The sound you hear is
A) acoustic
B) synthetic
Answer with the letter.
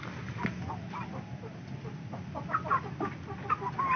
A